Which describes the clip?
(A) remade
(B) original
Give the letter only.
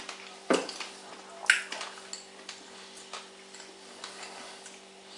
B